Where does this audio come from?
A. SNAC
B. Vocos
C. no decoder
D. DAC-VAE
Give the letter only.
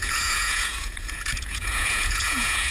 B